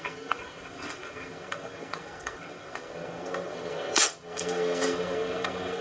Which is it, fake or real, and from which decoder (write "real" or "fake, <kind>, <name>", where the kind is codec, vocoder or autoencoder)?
fake, codec, SNAC